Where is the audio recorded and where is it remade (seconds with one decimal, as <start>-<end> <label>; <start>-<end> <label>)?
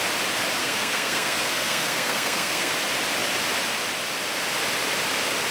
0.0-0.6 recorded; 0.6-2.7 remade; 2.7-5.5 recorded